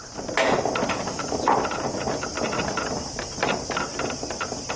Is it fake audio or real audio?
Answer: real